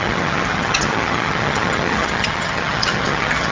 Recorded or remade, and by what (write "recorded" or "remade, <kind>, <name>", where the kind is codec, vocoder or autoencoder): remade, vocoder, HiFi-GAN